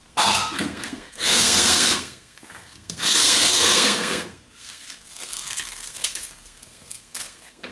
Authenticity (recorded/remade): remade